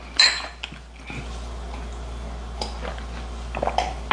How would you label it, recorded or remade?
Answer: recorded